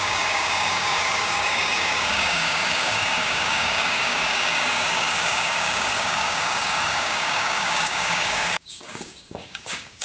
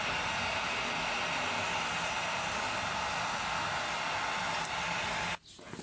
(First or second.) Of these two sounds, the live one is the second